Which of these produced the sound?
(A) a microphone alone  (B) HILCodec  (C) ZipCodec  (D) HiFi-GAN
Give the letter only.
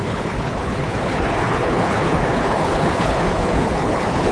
B